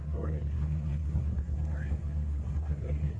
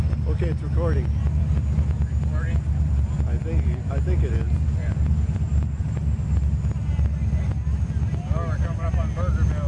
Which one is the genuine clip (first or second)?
second